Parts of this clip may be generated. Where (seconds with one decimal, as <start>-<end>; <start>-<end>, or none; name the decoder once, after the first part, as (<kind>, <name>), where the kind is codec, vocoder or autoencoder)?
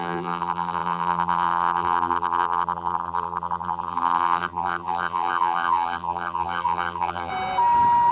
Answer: 0.0-7.3 (vocoder, BigVGAN v2)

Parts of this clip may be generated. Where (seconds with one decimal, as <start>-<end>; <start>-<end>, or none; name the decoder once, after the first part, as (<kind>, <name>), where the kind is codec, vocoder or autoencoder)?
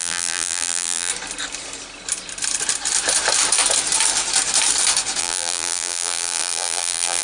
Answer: 0.0-1.1 (vocoder, BigVGAN v2); 5.2-7.2